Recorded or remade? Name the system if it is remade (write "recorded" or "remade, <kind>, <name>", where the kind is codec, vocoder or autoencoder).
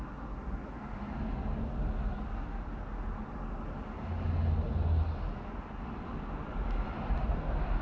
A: recorded